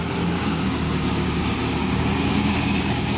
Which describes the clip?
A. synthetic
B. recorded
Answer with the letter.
A